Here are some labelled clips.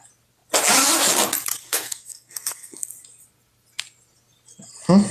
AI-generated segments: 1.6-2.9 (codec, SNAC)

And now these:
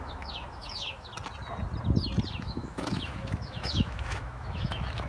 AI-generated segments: 0.0-1.1 (autoencoder, DAC-VAE); 2.4-5.1

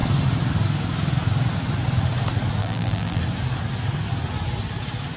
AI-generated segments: 2.6-3.2 (vocoder, BigVGAN v2)

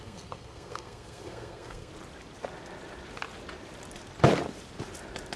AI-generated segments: 0.0-1.9 (codec, SNAC)

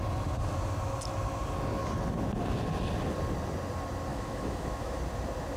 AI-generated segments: 4.1-5.0 (autoencoder, DAC-VAE)

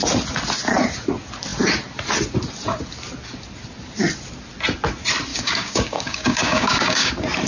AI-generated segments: 5.3-7.1 (codec, DAC)

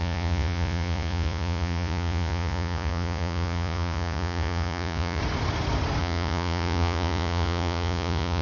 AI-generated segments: 0.0-5.2 (vocoder, Vocos); 6.0-8.4